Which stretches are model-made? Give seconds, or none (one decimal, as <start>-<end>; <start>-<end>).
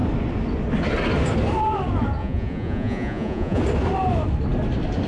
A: 2.2-3.6